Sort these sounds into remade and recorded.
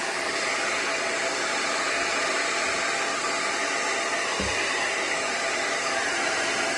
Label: recorded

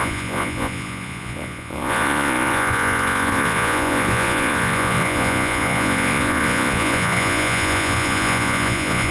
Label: remade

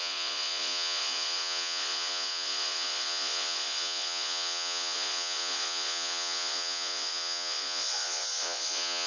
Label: remade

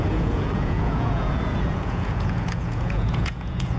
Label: remade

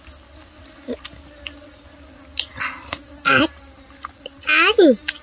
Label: recorded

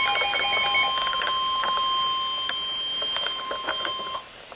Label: recorded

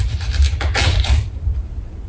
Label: recorded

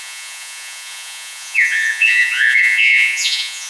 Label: remade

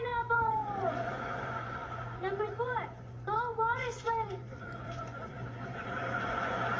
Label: remade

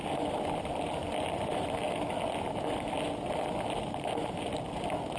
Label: recorded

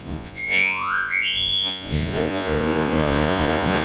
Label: remade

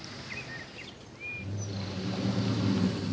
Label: recorded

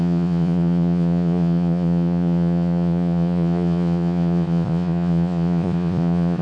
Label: remade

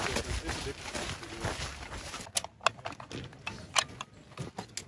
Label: recorded